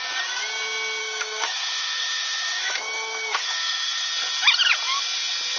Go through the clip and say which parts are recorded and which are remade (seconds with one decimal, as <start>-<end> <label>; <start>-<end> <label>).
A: 0.0-1.0 recorded; 1.0-4.1 remade; 4.1-5.6 recorded